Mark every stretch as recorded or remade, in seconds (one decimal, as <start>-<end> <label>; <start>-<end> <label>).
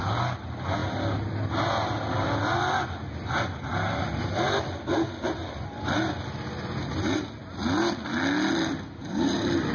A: 0.0-9.7 recorded